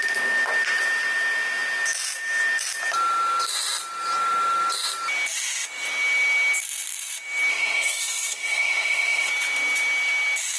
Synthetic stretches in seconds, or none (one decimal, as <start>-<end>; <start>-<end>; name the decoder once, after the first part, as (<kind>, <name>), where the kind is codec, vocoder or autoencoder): 7.5-9.3 (codec, SNAC)